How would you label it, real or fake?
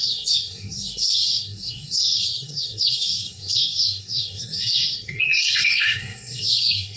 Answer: fake